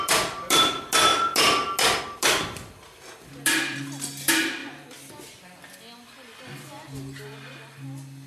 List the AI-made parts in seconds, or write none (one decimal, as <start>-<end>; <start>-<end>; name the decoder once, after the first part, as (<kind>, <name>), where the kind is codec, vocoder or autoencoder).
none

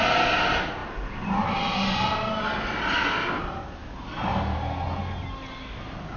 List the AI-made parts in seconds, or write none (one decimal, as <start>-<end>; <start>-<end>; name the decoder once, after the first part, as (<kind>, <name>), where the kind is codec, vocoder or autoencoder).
none

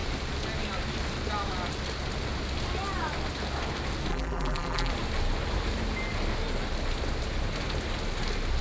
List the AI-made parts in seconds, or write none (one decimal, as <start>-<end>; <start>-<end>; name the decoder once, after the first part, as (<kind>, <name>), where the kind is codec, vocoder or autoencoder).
4.1-4.9 (vocoder, BigVGAN v2)